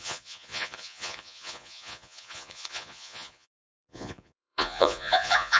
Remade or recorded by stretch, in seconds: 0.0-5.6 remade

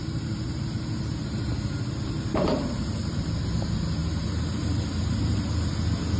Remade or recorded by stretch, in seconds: 0.0-3.1 remade; 3.1-4.0 recorded; 4.0-5.5 remade; 5.5-6.2 recorded

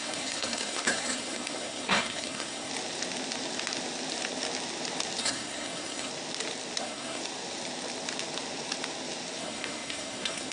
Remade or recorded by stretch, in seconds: 0.0-2.7 remade; 2.7-5.2 recorded; 5.2-6.1 remade; 6.1-6.8 recorded; 6.8-7.2 remade; 7.2-9.4 recorded; 9.4-10.5 remade

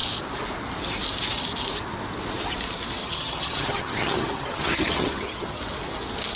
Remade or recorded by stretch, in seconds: 0.0-3.0 recorded; 3.0-5.6 remade; 5.6-6.4 recorded